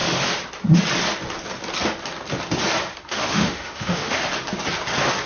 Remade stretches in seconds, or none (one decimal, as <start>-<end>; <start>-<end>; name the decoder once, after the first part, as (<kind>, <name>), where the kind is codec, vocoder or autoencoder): 3.0-4.2 (autoencoder, DAC-VAE)